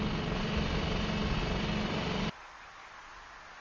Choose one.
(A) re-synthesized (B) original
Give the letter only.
B